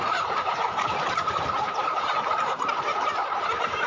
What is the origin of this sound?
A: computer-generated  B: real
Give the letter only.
A